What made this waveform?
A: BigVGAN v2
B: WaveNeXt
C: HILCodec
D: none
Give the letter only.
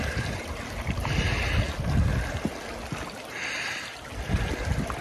D